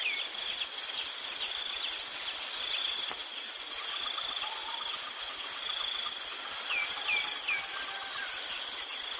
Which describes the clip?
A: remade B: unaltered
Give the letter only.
B